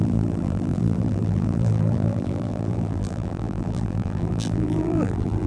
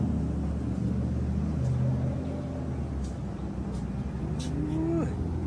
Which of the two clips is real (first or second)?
second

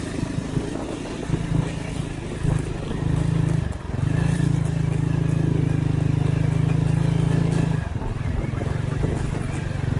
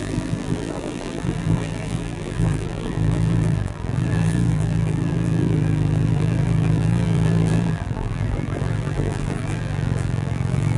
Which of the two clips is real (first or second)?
first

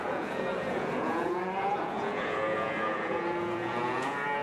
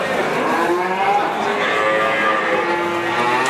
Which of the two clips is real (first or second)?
second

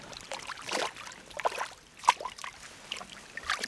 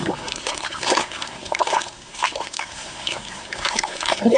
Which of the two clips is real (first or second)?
first